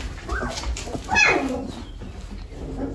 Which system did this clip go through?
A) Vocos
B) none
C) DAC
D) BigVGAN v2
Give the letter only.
B